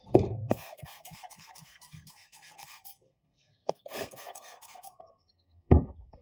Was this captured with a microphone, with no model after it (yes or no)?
no